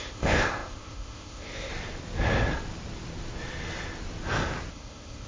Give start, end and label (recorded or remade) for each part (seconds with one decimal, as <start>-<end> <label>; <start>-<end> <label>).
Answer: 0.0-1.7 remade; 1.7-4.7 recorded; 4.7-5.3 remade